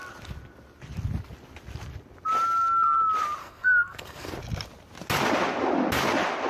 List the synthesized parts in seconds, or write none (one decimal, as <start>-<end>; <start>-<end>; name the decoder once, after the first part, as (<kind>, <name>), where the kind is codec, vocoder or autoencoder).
3.4-4.3 (codec, SNAC)